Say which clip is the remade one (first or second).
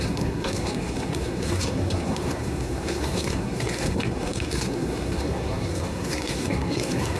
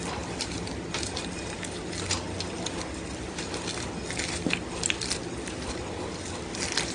first